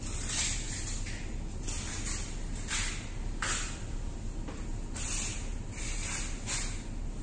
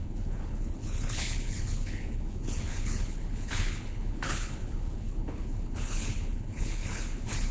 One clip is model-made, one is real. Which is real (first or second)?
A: first